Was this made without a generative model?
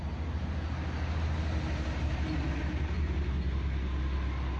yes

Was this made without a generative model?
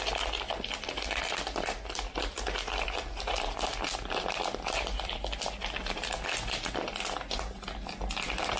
yes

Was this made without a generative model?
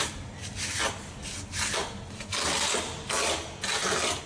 yes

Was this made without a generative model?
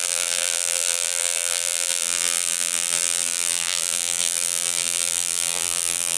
no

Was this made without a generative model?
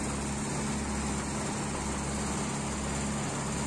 yes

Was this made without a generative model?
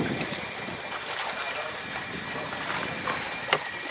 no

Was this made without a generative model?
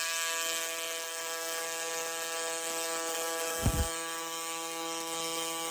no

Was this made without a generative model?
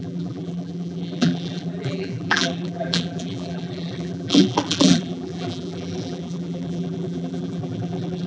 no